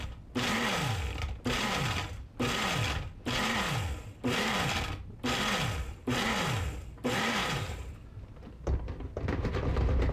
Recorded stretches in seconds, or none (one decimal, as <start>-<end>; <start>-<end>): 0.0-7.4; 7.9-10.1